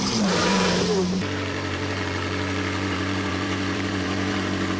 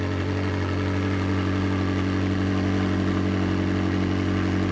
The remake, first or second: first